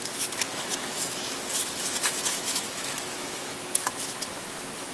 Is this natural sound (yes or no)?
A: no